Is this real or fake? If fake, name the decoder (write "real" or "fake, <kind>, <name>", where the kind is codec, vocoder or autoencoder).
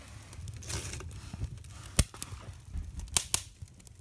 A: real